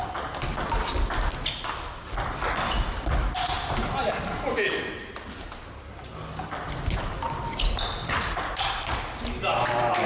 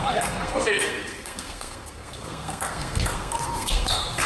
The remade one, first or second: second